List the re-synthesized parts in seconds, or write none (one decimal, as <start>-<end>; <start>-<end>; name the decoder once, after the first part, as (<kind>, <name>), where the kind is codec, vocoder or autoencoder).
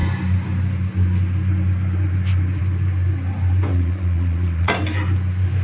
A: 3.7-4.7 (vocoder, Vocos)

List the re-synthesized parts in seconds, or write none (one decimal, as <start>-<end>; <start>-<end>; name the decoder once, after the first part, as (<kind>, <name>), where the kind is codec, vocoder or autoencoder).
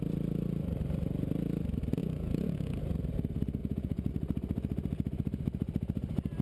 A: 2.0-2.8 (vocoder, Vocos); 3.6-4.1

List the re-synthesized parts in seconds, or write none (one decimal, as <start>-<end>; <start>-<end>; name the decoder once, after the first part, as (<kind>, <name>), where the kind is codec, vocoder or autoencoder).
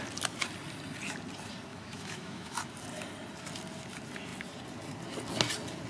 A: 1.7-2.6 (autoencoder, DAC-VAE)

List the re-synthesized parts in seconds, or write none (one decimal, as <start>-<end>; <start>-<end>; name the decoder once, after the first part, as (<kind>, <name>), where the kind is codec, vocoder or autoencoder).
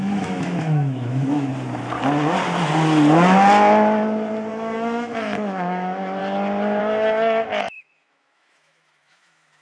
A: 0.0-1.5 (autoencoder, DAC-VAE); 4.5-6.2; 6.8-9.6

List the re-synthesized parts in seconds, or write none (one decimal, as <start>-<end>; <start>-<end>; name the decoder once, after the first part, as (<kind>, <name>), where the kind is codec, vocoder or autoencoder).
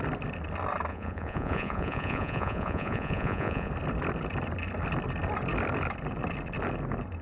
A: 0.9-3.7 (vocoder, Vocos)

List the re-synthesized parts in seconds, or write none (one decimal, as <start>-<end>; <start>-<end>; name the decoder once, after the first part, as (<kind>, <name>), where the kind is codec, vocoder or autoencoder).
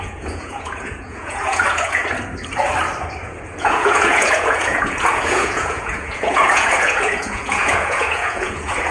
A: 0.0-2.0 (vocoder, Vocos); 3.2-8.9